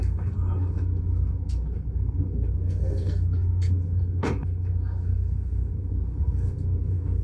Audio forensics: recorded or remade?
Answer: remade